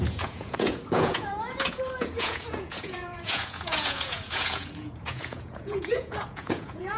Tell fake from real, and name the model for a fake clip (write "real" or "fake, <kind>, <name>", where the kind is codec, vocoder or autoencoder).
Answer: fake, vocoder, Vocos